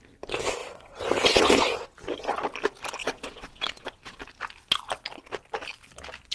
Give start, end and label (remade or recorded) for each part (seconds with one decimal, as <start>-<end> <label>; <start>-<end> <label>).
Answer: 0.0-0.6 recorded; 0.6-1.5 remade; 1.5-3.0 recorded; 3.0-4.2 remade; 4.2-6.3 recorded